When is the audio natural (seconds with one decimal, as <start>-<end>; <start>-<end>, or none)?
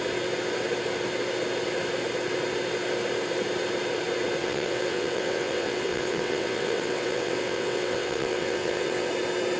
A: 0.0-4.4; 9.1-9.6